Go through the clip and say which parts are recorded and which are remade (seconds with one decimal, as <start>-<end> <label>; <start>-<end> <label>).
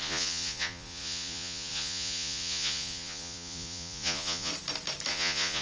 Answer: 0.0-4.5 remade; 4.5-5.1 recorded; 5.1-5.6 remade